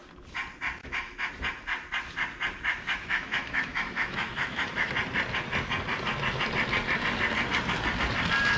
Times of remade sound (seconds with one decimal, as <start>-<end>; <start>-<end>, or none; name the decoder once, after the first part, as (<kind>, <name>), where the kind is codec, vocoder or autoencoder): 0.8-1.3 (autoencoder, DAC-VAE); 2.7-4.9